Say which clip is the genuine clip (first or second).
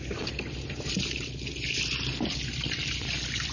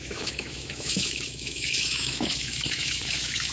first